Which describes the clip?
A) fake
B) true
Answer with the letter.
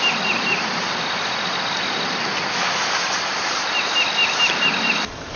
B